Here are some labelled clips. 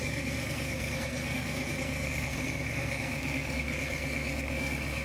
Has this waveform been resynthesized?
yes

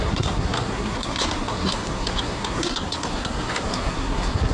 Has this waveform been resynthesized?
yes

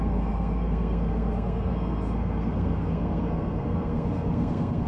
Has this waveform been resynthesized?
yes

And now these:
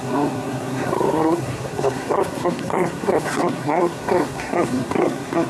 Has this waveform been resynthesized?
yes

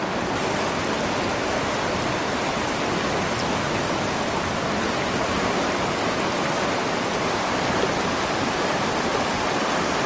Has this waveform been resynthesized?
no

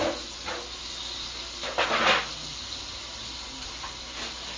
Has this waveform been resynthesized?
no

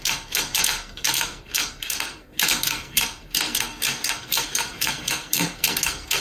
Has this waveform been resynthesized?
yes